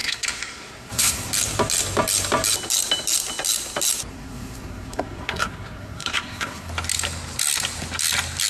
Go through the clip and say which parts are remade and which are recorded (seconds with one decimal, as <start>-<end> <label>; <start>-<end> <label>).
0.0-1.3 remade; 1.3-4.1 recorded; 4.1-6.7 remade; 6.7-8.5 recorded